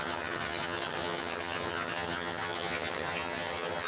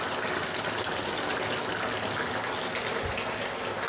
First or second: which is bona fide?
second